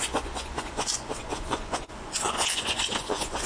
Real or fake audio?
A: fake